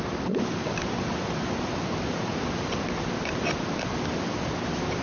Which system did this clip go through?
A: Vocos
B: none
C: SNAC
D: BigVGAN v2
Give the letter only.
B